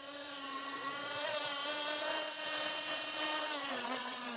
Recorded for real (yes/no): no